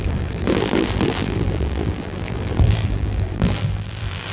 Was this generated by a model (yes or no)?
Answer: yes